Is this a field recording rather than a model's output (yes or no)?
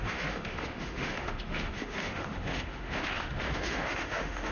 no